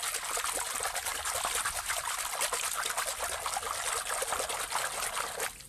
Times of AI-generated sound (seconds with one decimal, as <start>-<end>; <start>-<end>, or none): none